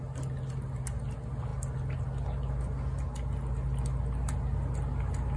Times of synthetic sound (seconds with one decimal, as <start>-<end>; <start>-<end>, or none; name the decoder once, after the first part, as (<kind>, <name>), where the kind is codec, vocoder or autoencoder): none